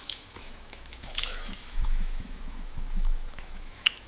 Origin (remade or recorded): remade